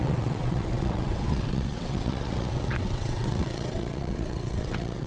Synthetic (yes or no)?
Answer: yes